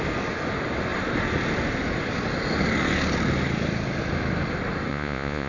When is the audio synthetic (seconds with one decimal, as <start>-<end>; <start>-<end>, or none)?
4.9-5.5